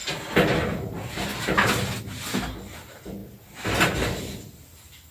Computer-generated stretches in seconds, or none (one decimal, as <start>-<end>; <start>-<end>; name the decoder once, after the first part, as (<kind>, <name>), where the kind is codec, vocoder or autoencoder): none